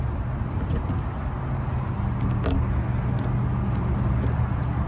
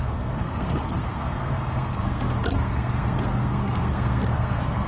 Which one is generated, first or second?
second